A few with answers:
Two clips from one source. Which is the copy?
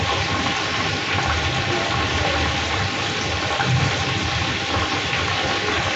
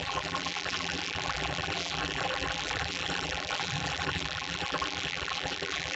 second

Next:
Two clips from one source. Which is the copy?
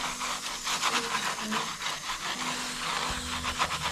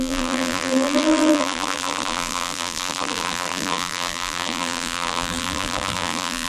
second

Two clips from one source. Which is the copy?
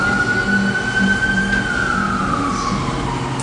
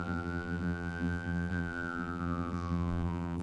second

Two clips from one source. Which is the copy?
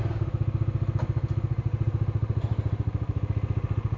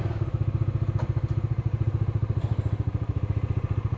second